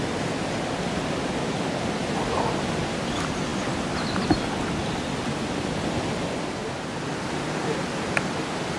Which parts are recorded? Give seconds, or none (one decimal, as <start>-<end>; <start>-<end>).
0.0-8.8